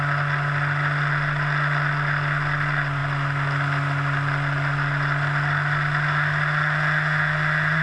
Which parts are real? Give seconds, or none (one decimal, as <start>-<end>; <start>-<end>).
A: 0.0-7.8